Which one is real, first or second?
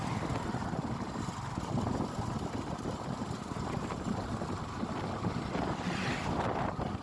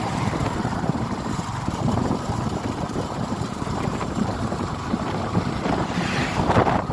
first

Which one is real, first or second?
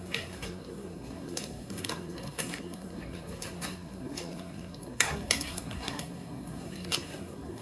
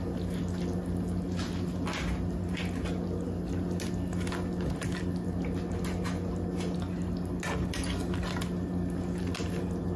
second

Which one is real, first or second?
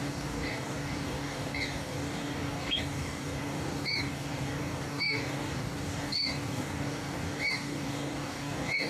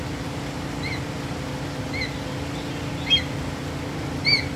second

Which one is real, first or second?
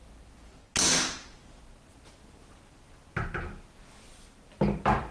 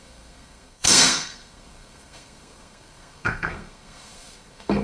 first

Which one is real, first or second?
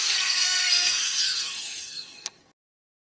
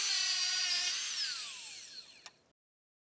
second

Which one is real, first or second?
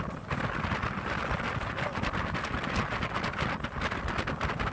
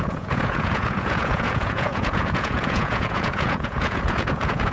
first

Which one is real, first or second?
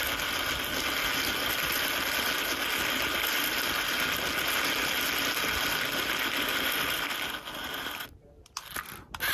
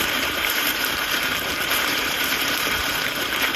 first